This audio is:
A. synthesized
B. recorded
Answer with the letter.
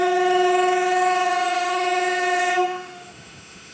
A